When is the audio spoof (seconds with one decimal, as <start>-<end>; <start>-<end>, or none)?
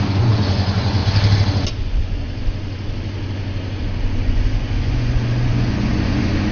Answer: 0.0-1.0; 1.7-2.4; 3.8-6.5